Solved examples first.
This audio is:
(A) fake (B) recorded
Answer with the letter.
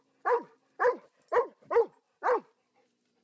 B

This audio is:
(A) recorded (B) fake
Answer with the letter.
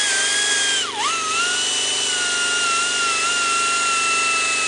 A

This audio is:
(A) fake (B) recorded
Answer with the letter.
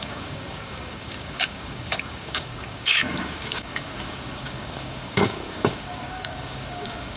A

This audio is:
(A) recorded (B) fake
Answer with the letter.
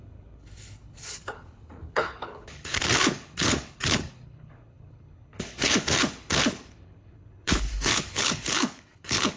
B